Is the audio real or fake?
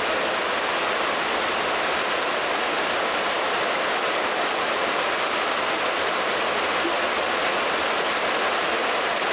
real